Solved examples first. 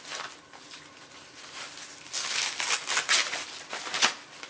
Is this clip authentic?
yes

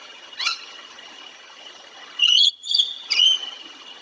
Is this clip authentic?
no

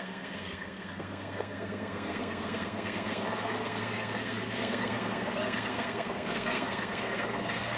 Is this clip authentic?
no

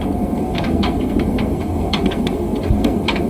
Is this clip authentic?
no